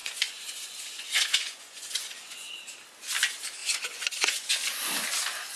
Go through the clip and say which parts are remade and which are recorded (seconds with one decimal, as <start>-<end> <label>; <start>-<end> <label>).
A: 0.0-2.5 remade; 2.5-3.6 recorded; 3.6-4.5 remade; 4.5-5.6 recorded